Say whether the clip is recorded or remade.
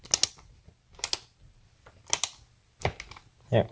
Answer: recorded